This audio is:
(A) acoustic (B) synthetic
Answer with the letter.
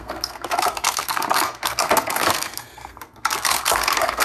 B